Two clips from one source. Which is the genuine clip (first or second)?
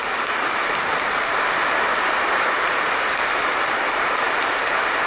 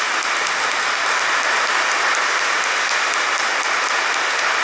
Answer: second